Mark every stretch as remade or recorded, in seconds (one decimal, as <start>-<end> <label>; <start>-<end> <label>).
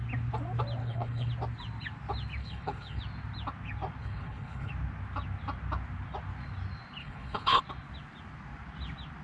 0.0-0.8 recorded; 0.8-1.3 remade; 1.3-2.4 recorded; 2.4-3.0 remade; 3.0-4.0 recorded; 4.0-4.7 remade; 4.7-7.0 recorded; 7.0-7.6 remade; 7.6-9.2 recorded